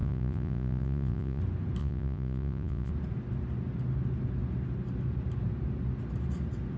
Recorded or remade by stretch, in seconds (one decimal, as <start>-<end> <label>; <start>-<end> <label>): 0.0-1.4 remade; 1.4-1.8 recorded; 1.8-2.9 remade; 2.9-6.8 recorded